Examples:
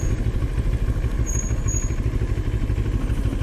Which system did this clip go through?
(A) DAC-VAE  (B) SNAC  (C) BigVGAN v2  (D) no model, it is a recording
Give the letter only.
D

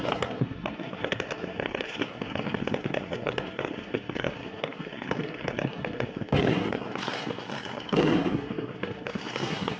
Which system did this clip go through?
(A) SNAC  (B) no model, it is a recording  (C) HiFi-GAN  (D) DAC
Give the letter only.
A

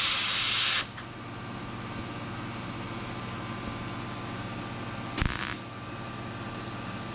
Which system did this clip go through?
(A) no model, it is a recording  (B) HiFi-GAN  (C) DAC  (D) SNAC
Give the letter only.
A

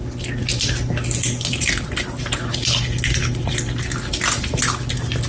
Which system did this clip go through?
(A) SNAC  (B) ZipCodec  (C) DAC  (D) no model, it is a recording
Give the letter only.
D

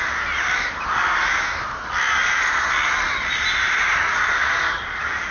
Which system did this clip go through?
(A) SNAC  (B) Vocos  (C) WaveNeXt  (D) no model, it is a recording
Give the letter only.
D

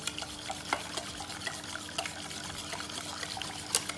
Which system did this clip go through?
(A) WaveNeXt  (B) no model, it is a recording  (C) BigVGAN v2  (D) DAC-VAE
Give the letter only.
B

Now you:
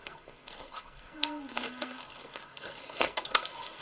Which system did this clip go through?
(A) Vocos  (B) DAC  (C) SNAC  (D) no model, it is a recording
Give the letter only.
C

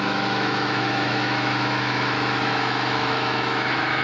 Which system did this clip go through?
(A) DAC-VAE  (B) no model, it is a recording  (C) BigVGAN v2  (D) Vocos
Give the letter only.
A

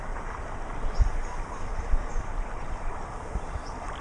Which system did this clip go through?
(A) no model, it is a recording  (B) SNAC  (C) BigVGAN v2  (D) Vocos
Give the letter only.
A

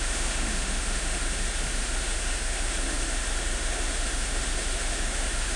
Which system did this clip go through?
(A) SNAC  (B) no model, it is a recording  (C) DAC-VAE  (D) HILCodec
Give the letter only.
C